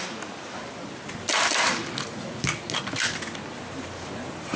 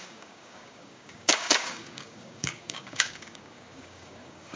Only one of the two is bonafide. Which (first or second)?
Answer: first